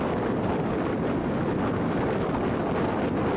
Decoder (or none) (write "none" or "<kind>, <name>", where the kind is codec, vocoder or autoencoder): none